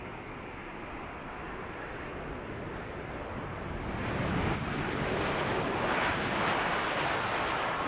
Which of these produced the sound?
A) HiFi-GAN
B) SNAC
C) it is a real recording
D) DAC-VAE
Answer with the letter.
C